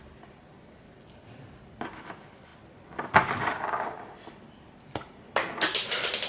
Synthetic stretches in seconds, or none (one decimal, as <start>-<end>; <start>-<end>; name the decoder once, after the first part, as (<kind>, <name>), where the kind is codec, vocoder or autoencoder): none